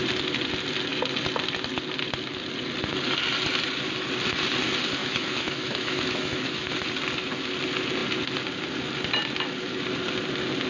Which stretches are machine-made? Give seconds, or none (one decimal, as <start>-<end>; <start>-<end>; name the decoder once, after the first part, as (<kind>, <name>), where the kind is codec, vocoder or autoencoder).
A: 5.0-6.7 (autoencoder, DAC-VAE)